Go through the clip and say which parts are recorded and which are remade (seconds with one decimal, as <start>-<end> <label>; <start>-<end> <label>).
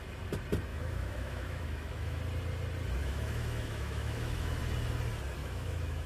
0.0-0.7 recorded; 0.7-2.2 remade; 2.2-3.0 recorded; 3.0-4.6 remade; 4.6-5.4 recorded; 5.4-6.1 remade